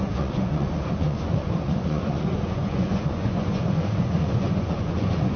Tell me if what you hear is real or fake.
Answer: fake